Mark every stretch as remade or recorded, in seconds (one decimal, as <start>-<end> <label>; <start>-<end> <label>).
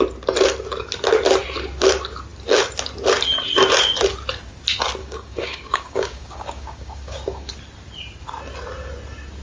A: 0.0-5.0 recorded; 5.0-7.5 remade; 7.5-9.4 recorded